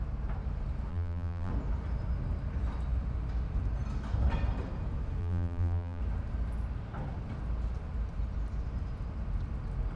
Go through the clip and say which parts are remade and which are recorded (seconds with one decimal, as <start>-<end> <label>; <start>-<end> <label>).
0.0-0.9 recorded; 0.9-1.5 remade; 1.5-5.2 recorded; 5.2-6.0 remade; 6.0-10.0 recorded